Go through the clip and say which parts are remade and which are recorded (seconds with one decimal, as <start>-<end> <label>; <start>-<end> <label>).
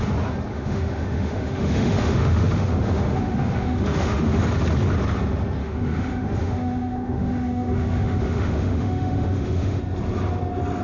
0.0-0.5 recorded; 0.5-4.4 remade; 4.4-5.6 recorded; 5.6-9.8 remade; 9.8-10.8 recorded